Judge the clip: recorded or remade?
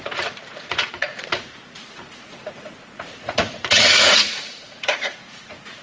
remade